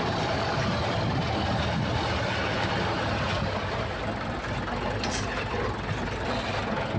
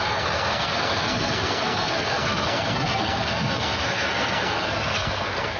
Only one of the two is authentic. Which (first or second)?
first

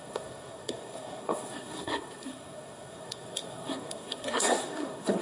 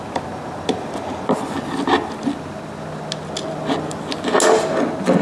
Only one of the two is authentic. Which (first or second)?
second